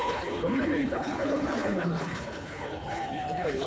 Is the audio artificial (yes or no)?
yes